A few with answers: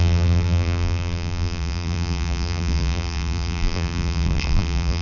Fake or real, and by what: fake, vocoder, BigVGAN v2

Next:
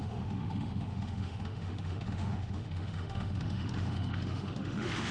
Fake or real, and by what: fake, autoencoder, DAC-VAE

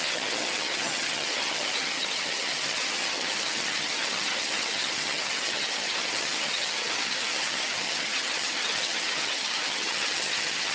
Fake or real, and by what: fake, vocoder, HiFi-GAN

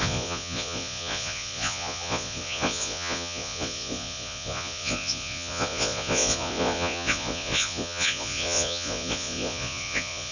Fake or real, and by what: fake, vocoder, Vocos